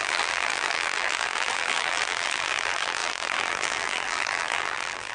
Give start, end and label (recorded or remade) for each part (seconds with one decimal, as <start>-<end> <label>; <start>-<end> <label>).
0.0-5.1 remade